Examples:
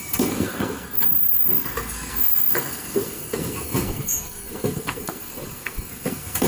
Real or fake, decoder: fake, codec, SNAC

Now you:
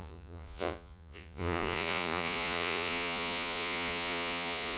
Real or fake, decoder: fake, vocoder, Vocos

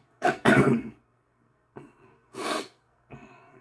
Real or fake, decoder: fake, codec, SNAC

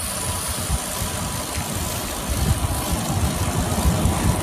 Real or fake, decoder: real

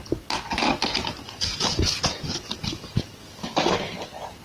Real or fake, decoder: real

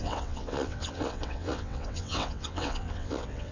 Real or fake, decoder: fake, vocoder, WaveNeXt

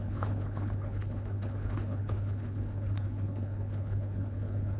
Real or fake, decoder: fake, codec, HILCodec